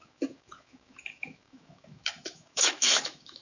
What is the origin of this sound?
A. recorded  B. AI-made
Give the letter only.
B